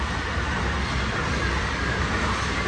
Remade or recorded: recorded